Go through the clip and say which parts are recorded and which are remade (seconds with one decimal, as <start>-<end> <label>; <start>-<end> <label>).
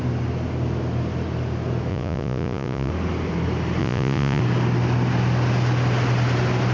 0.0-1.9 recorded; 1.9-2.9 remade; 2.9-3.8 recorded; 3.8-4.4 remade; 4.4-6.7 recorded